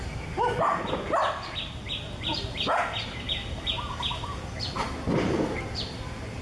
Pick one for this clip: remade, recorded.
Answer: recorded